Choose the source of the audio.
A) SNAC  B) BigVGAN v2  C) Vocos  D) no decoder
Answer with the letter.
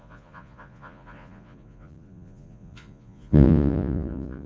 C